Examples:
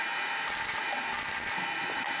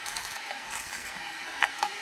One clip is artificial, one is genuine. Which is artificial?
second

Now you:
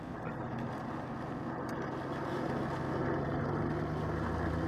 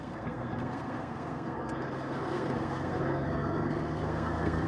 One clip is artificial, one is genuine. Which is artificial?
second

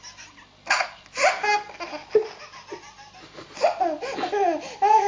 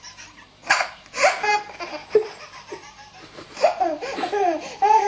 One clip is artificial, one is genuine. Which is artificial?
second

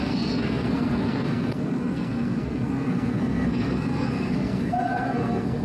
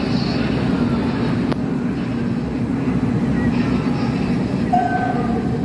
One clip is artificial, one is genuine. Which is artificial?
first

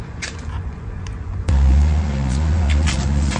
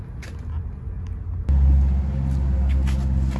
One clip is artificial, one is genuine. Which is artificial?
first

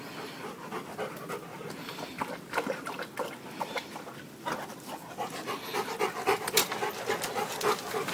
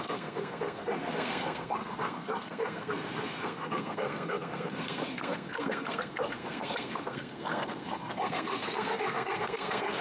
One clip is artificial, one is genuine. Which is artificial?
second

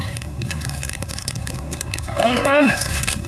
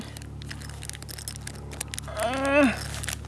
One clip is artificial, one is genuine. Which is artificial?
first